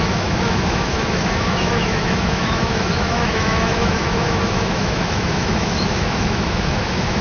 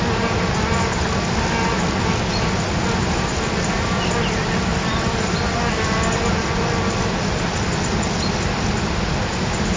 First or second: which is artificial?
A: first